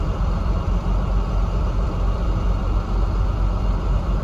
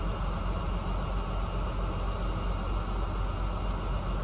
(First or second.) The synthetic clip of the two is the first